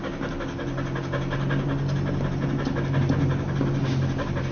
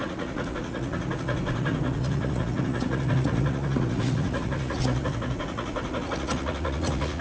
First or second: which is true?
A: first